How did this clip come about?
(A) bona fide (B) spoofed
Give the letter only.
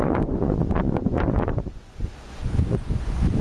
B